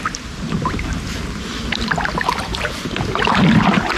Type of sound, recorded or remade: remade